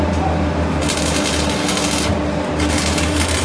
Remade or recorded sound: recorded